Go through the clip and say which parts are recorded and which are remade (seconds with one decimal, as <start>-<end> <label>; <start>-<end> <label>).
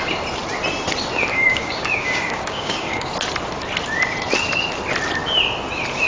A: 0.0-1.3 recorded; 1.3-3.1 remade; 3.1-6.1 recorded